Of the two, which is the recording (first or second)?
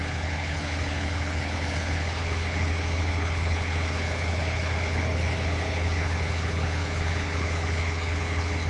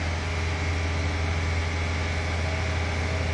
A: second